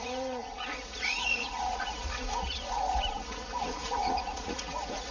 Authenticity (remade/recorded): remade